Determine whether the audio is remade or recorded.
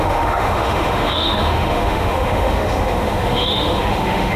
remade